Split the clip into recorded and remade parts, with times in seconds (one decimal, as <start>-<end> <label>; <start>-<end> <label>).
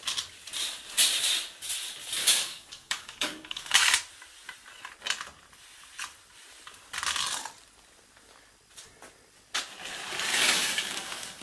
0.0-2.2 recorded; 2.2-3.8 remade; 3.8-10.3 recorded; 10.3-11.4 remade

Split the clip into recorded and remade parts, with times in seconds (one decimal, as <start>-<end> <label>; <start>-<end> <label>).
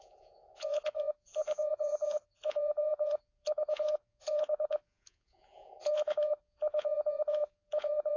0.0-8.2 remade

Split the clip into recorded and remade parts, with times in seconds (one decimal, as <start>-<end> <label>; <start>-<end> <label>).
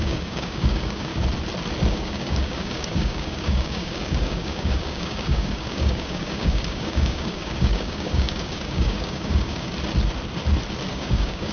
0.0-1.1 remade; 1.1-1.9 recorded; 1.9-9.7 remade; 9.7-10.9 recorded; 10.9-11.5 remade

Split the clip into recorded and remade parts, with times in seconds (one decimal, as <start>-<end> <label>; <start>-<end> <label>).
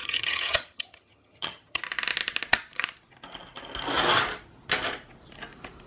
0.0-1.8 remade; 1.8-5.9 recorded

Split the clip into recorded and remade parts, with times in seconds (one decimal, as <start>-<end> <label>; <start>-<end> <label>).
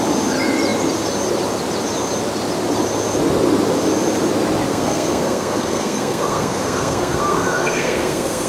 0.0-4.7 recorded; 4.7-8.5 remade